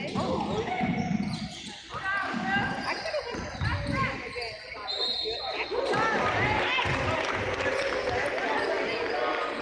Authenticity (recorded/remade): recorded